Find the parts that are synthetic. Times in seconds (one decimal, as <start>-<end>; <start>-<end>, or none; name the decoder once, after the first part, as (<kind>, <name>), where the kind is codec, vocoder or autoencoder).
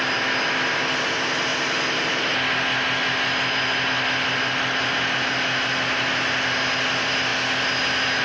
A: none